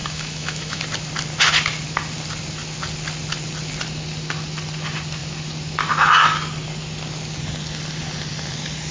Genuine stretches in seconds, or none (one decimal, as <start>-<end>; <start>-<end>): 0.8-8.9